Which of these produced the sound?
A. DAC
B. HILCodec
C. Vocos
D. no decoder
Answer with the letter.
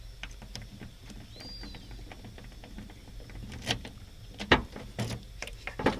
D